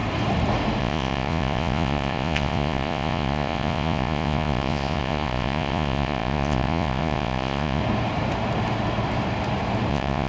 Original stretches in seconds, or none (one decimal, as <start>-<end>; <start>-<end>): 0.0-0.8; 7.8-9.9